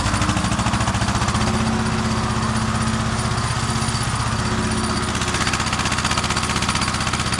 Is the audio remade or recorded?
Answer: recorded